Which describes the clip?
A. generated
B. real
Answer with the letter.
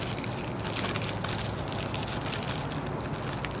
B